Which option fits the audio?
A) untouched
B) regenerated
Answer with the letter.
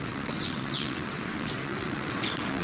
B